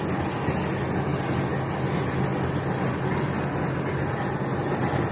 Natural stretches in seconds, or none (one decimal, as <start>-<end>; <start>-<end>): 0.0-5.1